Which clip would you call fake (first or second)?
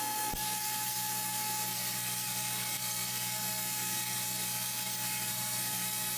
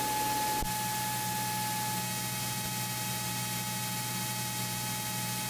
first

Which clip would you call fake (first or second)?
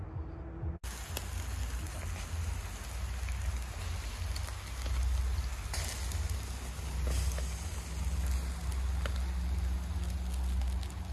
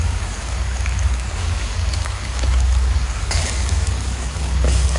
second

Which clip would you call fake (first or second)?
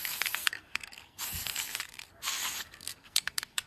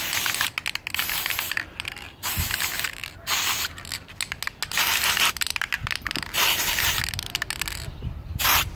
first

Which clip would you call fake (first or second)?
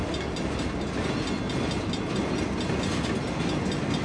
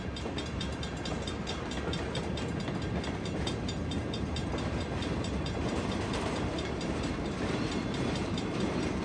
second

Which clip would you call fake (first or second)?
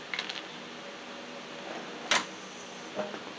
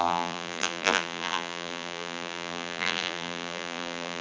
second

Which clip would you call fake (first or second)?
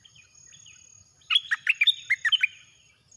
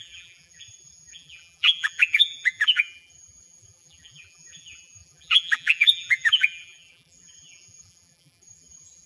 second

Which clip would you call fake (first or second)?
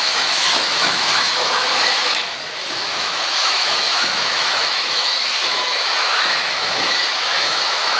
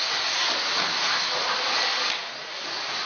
first